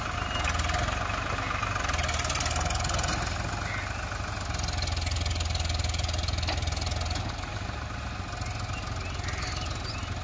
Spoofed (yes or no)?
no